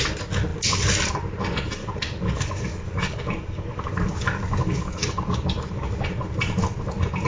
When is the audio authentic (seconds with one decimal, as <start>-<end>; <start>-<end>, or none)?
0.0-1.8; 6.0-7.3